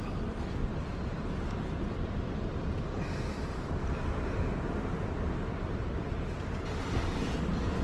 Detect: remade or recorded remade